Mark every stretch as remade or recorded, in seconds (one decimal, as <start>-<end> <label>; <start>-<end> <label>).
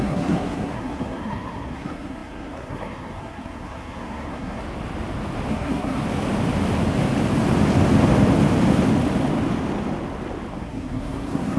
0.0-4.6 remade; 4.6-5.5 recorded; 5.5-6.0 remade; 6.0-10.6 recorded; 10.6-11.6 remade